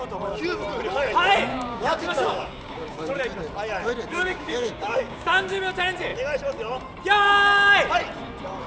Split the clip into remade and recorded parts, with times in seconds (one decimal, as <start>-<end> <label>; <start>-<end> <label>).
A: 0.0-1.5 recorded; 1.5-3.2 remade; 3.2-4.1 recorded; 4.1-5.6 remade; 5.6-8.7 recorded